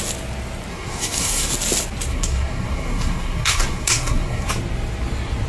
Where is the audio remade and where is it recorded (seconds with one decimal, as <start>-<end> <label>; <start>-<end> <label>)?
0.0-0.7 recorded; 0.7-1.5 remade; 1.5-2.1 recorded; 2.1-4.5 remade; 4.5-5.5 recorded